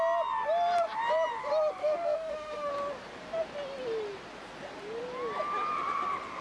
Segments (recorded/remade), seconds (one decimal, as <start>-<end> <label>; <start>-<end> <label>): 0.0-1.8 recorded; 1.8-2.7 remade; 2.7-6.4 recorded